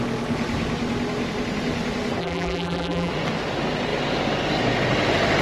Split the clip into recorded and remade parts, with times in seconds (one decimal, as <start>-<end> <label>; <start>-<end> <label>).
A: 0.0-2.2 recorded; 2.2-3.1 remade; 3.1-5.4 recorded